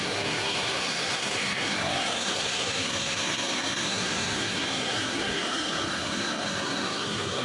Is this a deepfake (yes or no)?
yes